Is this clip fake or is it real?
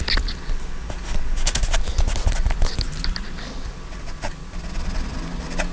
real